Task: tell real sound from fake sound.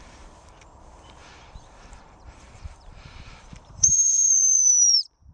fake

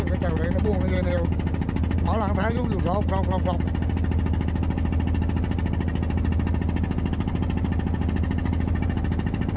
real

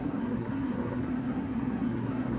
fake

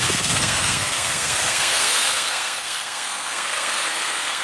fake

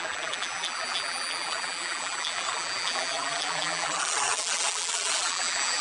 fake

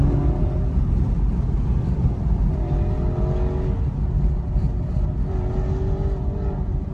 real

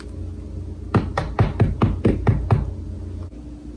real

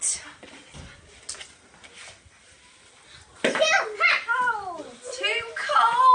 real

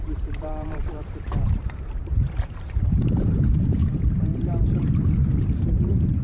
fake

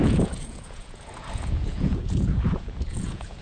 fake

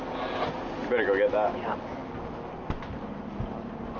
real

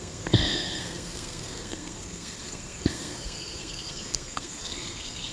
fake